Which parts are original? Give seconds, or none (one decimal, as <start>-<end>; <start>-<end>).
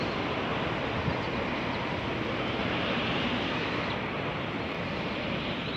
0.5-2.6